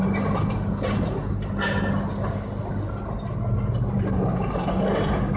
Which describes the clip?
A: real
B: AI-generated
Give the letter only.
A